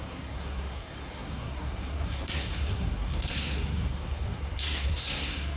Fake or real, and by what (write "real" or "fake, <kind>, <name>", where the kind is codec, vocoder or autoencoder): fake, codec, SNAC